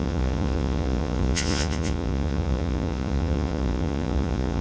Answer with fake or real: fake